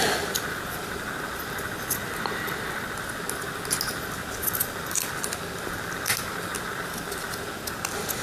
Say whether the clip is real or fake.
real